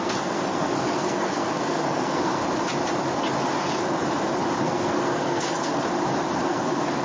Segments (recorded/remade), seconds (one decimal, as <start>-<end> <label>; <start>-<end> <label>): 0.0-2.4 remade; 2.4-4.6 recorded; 4.6-5.7 remade; 5.7-6.4 recorded; 6.4-7.0 remade